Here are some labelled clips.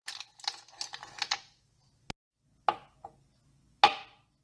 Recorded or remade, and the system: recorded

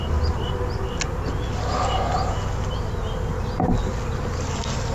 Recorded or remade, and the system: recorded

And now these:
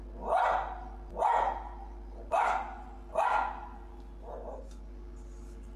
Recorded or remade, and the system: recorded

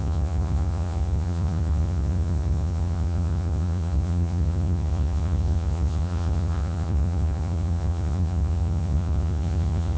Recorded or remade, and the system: remade, vocoder, Vocos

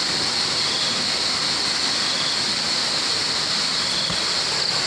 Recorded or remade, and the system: recorded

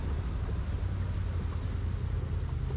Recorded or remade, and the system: recorded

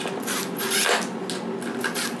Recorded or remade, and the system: recorded